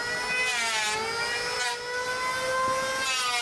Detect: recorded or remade recorded